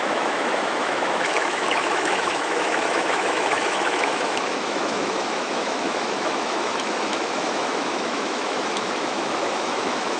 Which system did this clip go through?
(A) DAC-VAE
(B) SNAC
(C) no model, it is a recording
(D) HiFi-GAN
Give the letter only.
A